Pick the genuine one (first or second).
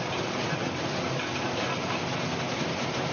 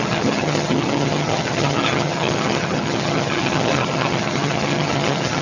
first